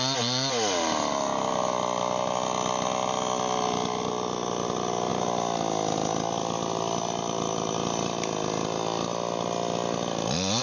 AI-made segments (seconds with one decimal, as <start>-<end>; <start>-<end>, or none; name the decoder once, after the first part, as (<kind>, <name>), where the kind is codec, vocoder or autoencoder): none